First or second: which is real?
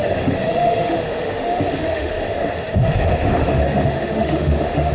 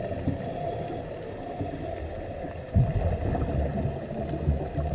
second